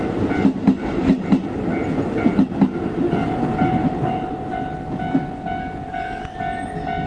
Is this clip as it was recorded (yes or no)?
yes